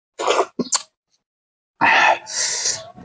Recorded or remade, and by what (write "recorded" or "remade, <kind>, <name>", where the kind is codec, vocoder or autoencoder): recorded